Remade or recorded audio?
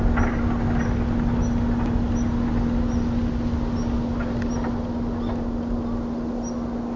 recorded